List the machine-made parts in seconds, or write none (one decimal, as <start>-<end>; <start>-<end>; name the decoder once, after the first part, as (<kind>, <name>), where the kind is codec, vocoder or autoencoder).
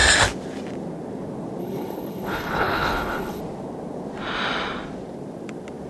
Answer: 1.6-3.4 (codec, HILCodec)